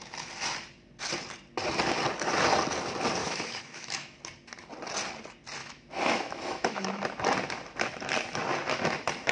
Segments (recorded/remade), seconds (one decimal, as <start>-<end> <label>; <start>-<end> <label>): 0.0-3.2 recorded; 3.2-4.2 remade; 4.2-5.6 recorded; 5.6-7.0 remade; 7.0-9.3 recorded